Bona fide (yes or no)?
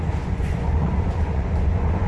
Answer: no